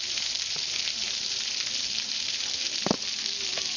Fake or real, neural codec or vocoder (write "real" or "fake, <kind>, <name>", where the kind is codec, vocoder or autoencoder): fake, vocoder, BigVGAN v2